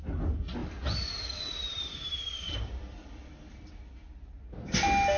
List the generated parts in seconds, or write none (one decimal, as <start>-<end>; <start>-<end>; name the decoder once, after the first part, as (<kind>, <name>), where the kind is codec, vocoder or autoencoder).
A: 0.6-3.7 (vocoder, BigVGAN v2)